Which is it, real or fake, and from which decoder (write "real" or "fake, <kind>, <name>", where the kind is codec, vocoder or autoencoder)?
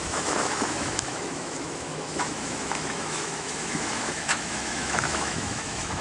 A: fake, autoencoder, DAC-VAE